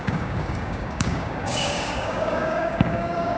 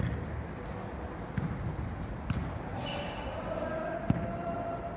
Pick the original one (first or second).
second